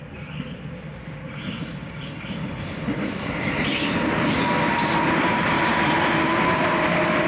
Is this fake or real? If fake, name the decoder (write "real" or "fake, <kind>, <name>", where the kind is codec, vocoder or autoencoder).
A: fake, vocoder, BigVGAN v2